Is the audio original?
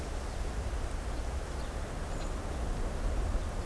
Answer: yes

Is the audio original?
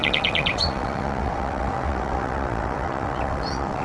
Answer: no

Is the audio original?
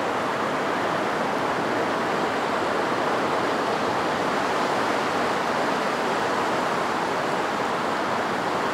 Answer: yes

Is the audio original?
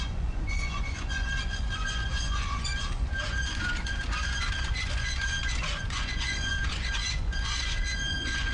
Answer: no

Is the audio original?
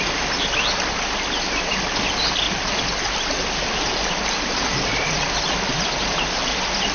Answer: yes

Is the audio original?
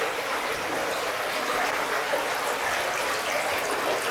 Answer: yes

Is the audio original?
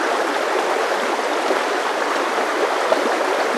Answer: no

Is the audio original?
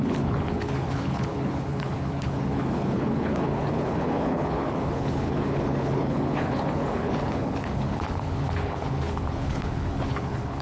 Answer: no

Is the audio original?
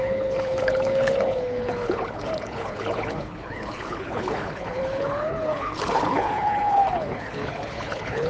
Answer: no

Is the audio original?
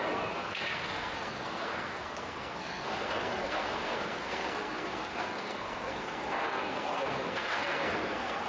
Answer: no